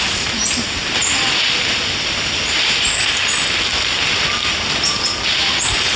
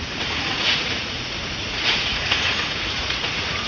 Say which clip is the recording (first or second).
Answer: first